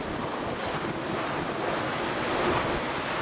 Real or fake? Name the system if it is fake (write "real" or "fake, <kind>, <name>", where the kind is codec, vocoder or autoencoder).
real